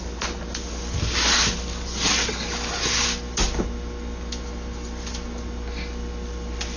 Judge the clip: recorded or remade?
recorded